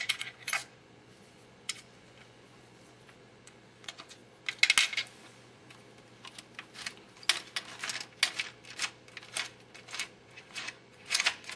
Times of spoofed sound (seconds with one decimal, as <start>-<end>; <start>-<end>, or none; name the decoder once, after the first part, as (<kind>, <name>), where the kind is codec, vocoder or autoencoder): 0.0-4.2 (vocoder, Vocos); 5.2-5.7; 10.2-11.6